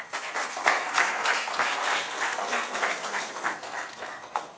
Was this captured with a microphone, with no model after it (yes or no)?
no